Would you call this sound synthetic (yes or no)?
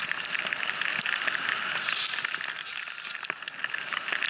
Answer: no